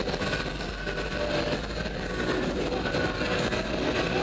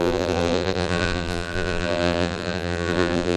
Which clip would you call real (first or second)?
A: first